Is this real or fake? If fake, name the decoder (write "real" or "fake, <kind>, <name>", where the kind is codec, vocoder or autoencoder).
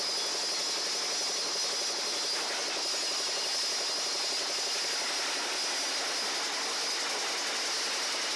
real